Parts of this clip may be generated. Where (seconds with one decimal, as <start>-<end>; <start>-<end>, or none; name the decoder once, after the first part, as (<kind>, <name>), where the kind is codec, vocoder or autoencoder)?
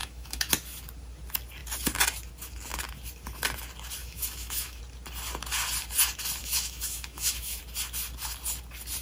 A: 0.0-0.5 (autoencoder, DAC-VAE); 4.0-4.8; 6.4-7.6